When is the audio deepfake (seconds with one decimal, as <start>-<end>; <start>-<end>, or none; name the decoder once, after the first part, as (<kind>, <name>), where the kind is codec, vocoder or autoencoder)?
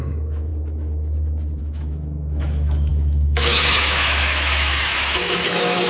0.0-0.5 (autoencoder, DAC-VAE); 1.6-5.9